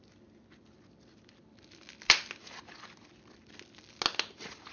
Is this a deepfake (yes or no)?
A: no